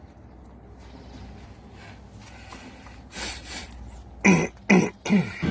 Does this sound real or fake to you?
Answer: real